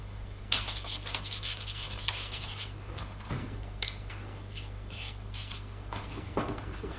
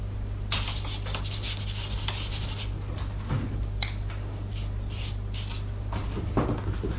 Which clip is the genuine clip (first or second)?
second